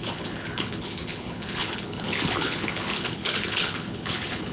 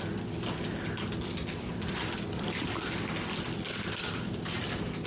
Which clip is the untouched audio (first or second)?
second